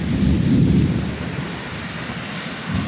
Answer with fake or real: real